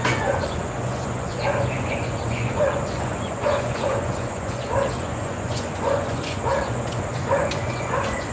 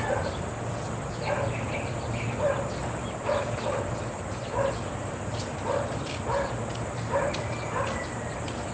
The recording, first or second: second